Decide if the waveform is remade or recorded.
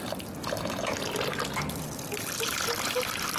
recorded